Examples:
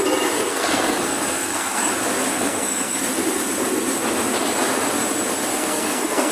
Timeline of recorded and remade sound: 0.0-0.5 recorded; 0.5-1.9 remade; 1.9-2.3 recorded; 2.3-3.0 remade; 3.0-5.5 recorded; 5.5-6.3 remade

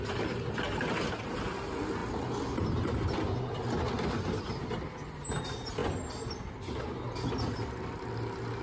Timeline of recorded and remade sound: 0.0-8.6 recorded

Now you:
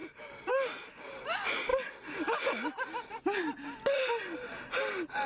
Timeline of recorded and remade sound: 0.0-5.3 recorded